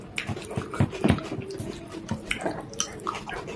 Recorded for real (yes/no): yes